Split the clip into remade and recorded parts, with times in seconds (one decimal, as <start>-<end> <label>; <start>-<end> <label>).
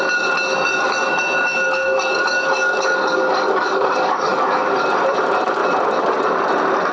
0.0-0.5 recorded; 0.5-4.6 remade; 4.6-6.9 recorded